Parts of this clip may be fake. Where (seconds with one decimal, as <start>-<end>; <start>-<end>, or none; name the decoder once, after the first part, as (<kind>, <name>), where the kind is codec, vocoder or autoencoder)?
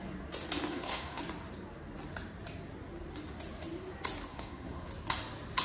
0.7-1.2 (codec, SNAC); 4.3-4.9